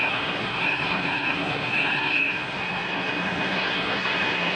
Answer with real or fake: fake